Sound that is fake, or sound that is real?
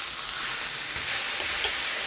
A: real